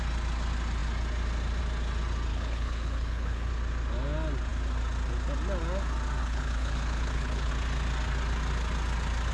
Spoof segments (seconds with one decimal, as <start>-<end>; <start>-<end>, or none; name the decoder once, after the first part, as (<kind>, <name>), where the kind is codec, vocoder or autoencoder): 2.3-3.5 (codec, HILCodec); 6.2-7.5